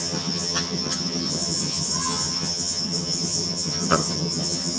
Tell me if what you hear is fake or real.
fake